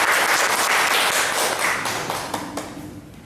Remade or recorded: recorded